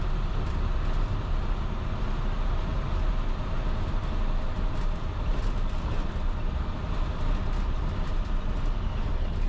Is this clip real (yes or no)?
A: yes